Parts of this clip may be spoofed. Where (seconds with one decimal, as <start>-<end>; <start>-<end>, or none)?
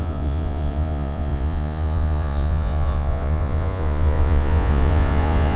0.0-5.6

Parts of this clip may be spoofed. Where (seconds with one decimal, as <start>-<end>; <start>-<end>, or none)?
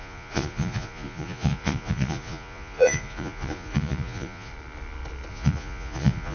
0.0-4.5; 5.3-6.3